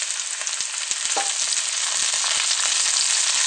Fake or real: real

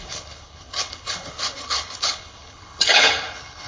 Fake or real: fake